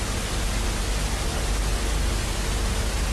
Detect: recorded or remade recorded